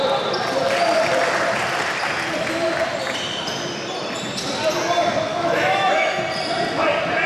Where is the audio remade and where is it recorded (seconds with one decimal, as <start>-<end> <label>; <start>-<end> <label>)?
0.0-5.3 recorded; 5.3-6.2 remade; 6.2-7.3 recorded